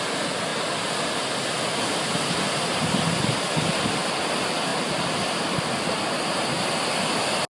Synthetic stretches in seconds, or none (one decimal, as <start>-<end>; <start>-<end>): 4.7-5.6